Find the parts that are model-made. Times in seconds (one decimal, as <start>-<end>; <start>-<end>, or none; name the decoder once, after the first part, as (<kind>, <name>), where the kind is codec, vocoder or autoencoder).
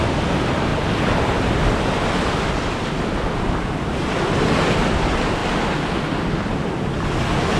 none